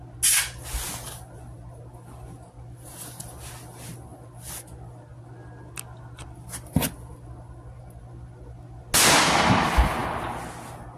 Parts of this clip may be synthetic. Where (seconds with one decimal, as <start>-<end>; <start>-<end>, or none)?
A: none